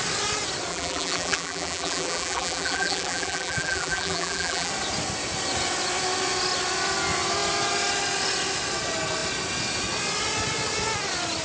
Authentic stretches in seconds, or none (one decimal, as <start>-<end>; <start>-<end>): 0.0-0.7; 4.7-11.4